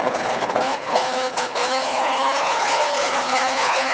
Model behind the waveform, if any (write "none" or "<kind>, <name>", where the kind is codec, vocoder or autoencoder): codec, HILCodec